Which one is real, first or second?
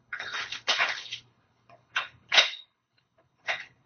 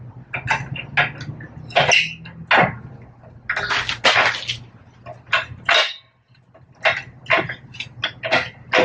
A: second